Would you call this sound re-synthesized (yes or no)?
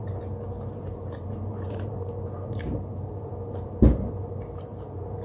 yes